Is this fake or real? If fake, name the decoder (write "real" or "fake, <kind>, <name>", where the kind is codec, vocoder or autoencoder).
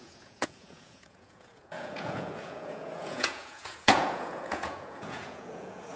fake, vocoder, Vocos